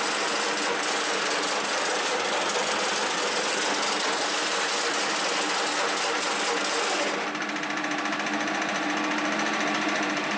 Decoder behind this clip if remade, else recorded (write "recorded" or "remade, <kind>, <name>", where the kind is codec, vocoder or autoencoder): recorded